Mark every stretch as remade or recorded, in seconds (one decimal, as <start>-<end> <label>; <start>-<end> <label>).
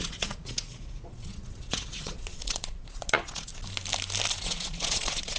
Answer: 0.0-3.5 remade; 3.5-4.3 recorded; 4.3-5.4 remade